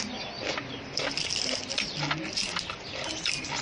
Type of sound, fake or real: fake